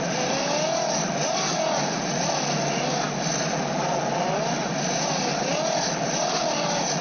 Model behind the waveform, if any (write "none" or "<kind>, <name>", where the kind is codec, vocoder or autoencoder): none